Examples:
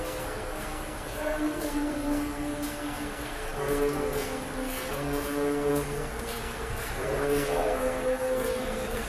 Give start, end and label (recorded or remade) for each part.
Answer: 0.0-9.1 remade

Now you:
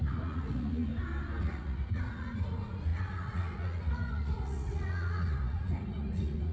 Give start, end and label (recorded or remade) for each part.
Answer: 0.0-0.9 remade; 0.9-1.4 recorded; 1.4-6.5 remade

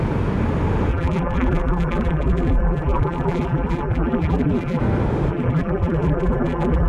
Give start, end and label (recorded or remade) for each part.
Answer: 0.0-0.9 recorded; 0.9-4.8 remade; 4.8-5.3 recorded; 5.3-6.9 remade

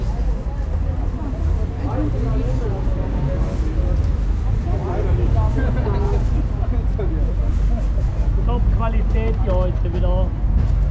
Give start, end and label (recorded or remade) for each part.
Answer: 0.0-10.9 recorded

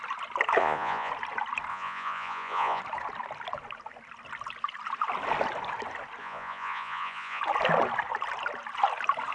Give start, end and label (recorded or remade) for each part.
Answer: 0.0-0.6 recorded; 0.6-1.1 remade; 1.1-1.7 recorded; 1.7-2.8 remade; 2.8-6.2 recorded; 6.2-7.4 remade; 7.4-9.3 recorded

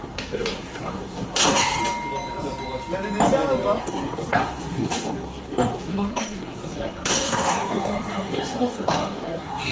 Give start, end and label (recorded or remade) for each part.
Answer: 0.0-1.8 remade; 1.8-3.8 recorded; 3.8-9.7 remade

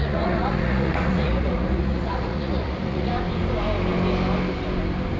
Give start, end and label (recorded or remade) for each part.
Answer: 0.0-3.1 remade; 3.1-5.2 recorded

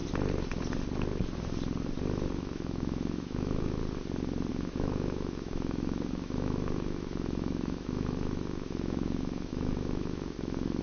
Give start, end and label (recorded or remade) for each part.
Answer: 0.0-2.3 recorded; 2.3-3.8 remade; 3.8-4.5 recorded; 4.5-10.8 remade